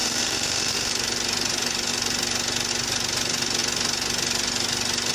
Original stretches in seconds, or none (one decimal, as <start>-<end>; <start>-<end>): 0.9-5.1